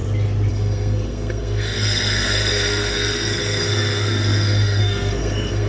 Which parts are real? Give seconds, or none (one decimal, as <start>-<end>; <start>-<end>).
0.0-0.5